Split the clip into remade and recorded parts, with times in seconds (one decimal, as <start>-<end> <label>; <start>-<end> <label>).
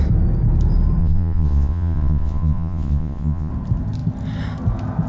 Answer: 0.0-1.0 recorded; 1.0-3.5 remade; 3.5-5.1 recorded